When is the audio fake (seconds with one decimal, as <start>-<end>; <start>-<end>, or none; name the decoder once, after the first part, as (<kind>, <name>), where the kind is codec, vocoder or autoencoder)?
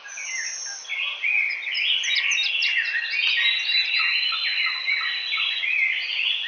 none